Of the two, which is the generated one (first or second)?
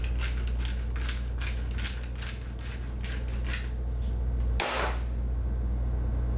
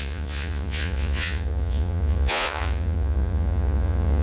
second